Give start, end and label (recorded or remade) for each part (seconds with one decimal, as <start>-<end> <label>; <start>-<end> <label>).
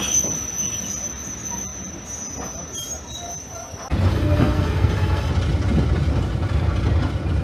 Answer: 0.0-4.1 recorded; 4.1-5.3 remade; 5.3-7.4 recorded